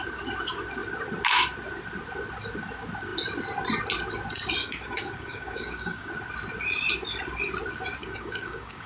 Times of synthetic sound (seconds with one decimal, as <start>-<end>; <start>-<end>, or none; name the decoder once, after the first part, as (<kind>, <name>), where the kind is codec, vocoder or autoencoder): 4.6-6.1 (codec, DAC); 8.0-8.9